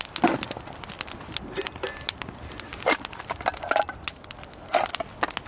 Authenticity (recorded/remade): recorded